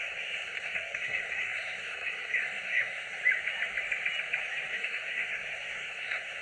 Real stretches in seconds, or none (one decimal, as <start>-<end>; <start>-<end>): 3.2-4.7